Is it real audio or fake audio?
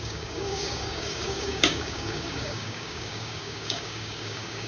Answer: fake